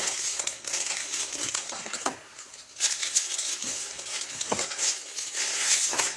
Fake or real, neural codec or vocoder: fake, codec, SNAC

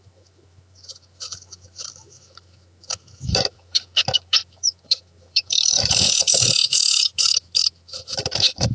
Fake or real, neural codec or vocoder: fake, autoencoder, DAC-VAE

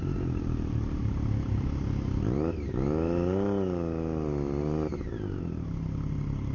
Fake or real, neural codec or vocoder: real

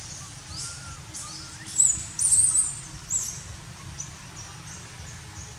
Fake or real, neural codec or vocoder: real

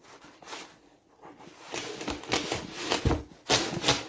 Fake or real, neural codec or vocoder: real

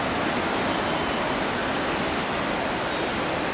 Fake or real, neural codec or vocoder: real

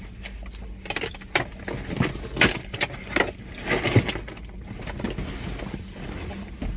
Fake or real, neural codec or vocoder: real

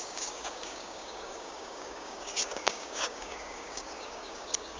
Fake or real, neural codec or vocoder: fake, codec, DAC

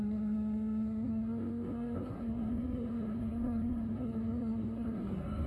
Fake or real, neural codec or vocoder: fake, codec, SNAC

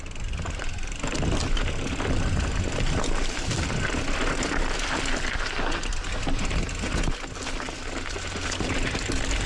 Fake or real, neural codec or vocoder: fake, vocoder, BigVGAN v2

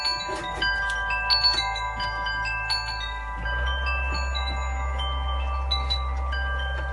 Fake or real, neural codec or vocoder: real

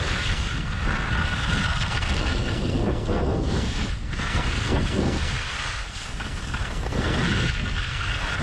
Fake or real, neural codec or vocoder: fake, codec, SNAC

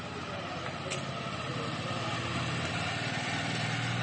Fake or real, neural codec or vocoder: real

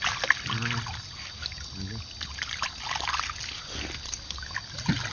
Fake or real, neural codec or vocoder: real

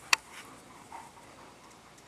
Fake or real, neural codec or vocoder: fake, vocoder, BigVGAN v2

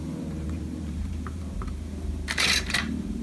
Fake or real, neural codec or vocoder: fake, vocoder, BigVGAN v2